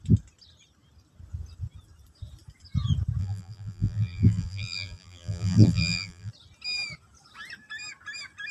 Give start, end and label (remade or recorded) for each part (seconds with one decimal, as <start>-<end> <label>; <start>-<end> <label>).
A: 0.0-3.2 recorded; 3.2-6.3 remade; 6.3-8.5 recorded